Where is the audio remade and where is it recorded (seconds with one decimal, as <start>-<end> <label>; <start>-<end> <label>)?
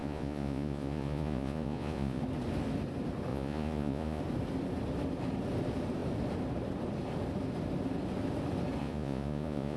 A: 0.0-2.2 remade; 2.2-3.3 recorded; 3.3-4.2 remade; 4.2-8.8 recorded; 8.8-9.8 remade